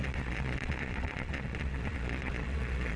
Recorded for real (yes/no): no